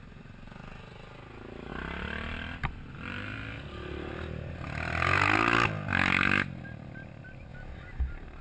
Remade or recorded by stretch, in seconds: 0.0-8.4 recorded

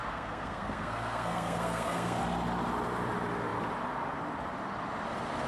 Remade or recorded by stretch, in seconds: 0.0-2.2 remade; 2.2-5.5 recorded